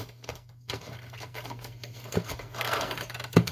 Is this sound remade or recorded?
remade